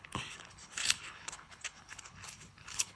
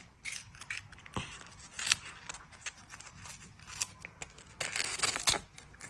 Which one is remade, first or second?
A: first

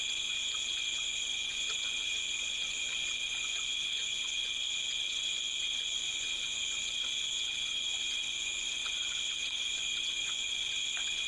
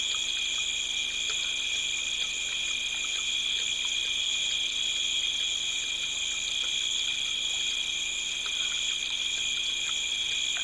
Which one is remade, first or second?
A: first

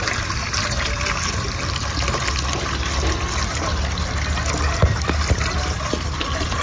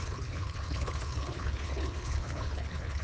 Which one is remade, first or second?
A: second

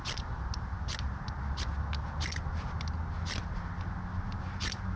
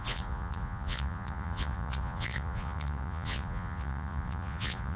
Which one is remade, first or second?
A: second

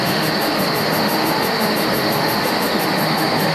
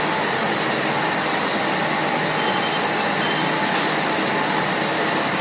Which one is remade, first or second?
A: first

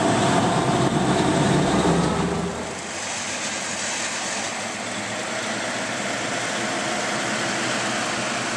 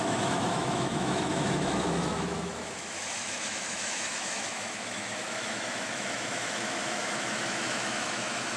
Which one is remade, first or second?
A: second